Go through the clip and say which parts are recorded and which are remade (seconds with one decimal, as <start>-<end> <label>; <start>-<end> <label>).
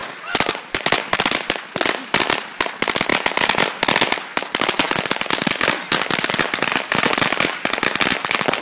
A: 0.0-8.6 recorded